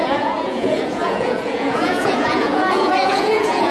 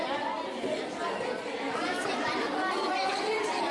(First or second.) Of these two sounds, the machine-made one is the first